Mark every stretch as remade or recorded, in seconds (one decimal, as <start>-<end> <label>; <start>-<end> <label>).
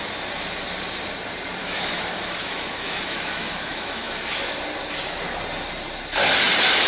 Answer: 0.0-1.6 recorded; 1.6-4.4 remade; 4.4-6.9 recorded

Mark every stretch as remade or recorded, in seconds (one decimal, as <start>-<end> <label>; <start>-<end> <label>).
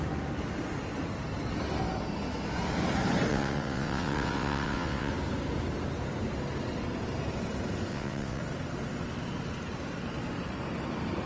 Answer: 0.0-3.3 recorded; 3.3-5.1 remade; 5.1-7.9 recorded; 7.9-8.4 remade; 8.4-11.3 recorded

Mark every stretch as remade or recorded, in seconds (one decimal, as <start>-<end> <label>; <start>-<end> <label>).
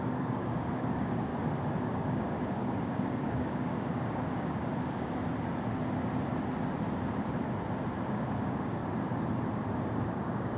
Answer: 0.0-1.3 remade; 1.3-1.9 recorded; 1.9-5.2 remade; 5.2-8.1 recorded; 8.1-8.8 remade; 8.8-10.1 recorded; 10.1-10.6 remade